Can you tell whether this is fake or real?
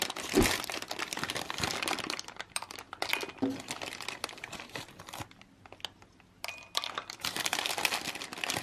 real